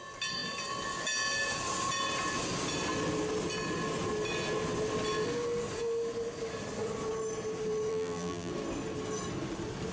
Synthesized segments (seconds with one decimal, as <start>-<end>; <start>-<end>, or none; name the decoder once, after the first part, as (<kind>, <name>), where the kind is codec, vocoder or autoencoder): 7.9-8.5 (vocoder, BigVGAN v2)